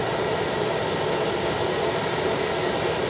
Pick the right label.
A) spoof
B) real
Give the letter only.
B